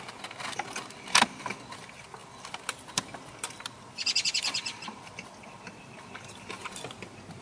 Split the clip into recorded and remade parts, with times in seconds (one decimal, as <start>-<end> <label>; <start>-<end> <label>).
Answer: 0.0-2.2 recorded; 2.2-6.6 remade; 6.6-7.4 recorded